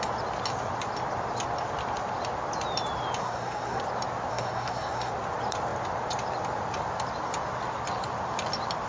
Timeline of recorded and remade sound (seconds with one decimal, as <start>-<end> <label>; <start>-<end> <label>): 0.0-3.2 recorded; 3.2-3.8 remade; 3.8-4.3 recorded; 4.3-5.1 remade; 5.1-8.9 recorded